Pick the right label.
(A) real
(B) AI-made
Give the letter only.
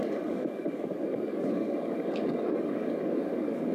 B